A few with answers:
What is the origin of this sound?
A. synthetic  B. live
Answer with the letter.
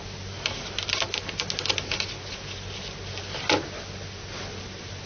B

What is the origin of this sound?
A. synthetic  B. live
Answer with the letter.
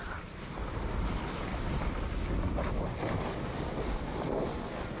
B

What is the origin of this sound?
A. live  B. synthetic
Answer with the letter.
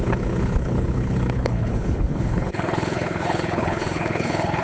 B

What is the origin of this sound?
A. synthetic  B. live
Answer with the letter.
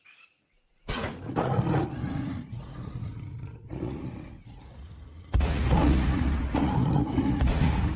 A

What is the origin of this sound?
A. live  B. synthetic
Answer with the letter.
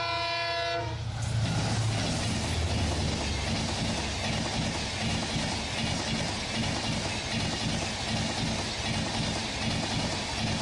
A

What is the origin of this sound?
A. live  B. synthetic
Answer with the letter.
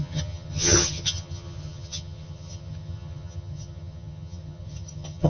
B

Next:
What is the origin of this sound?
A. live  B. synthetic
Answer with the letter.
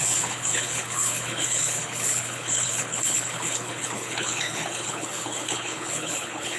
B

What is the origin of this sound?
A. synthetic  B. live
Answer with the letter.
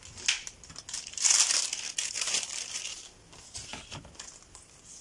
B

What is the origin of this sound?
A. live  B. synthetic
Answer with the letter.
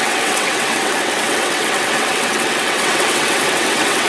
B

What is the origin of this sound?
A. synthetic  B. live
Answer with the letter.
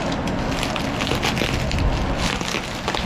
B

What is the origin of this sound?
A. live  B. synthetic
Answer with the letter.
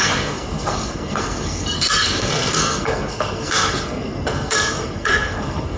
B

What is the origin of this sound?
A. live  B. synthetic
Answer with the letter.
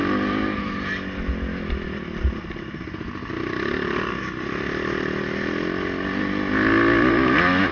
A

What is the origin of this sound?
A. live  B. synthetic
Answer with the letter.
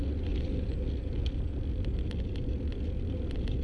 A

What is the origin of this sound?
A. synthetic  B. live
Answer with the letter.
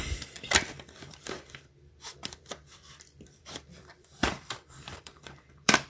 A